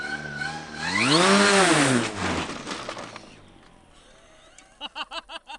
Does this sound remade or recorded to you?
recorded